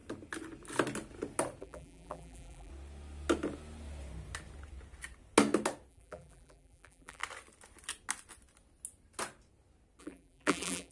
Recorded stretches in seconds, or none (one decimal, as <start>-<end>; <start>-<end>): 0.0-1.6; 2.7-5.9; 7.2-10.0